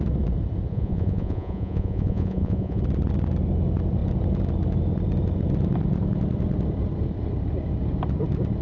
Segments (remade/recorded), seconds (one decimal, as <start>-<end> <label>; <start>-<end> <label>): 0.0-0.7 recorded; 0.7-2.8 remade; 2.8-8.6 recorded